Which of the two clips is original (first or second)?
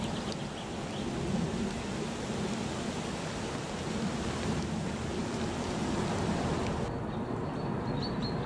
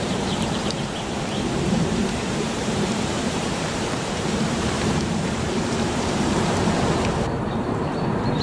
first